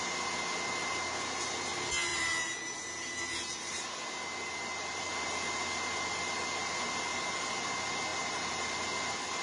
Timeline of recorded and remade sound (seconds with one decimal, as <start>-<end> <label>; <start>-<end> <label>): 0.0-2.1 recorded; 2.1-5.2 remade; 5.2-8.1 recorded; 8.1-8.6 remade; 8.6-9.4 recorded